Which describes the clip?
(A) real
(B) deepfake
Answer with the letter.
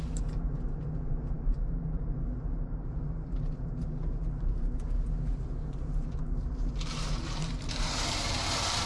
B